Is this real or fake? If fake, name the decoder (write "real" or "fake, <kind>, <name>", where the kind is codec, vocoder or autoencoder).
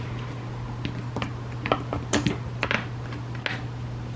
real